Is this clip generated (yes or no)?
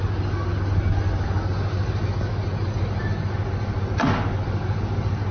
no